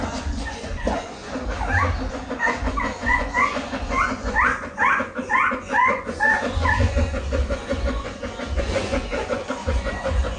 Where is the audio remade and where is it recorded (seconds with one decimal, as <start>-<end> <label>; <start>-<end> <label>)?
0.0-1.2 remade; 1.2-2.1 recorded; 2.1-10.4 remade